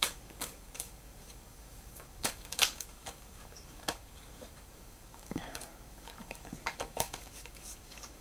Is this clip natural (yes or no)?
no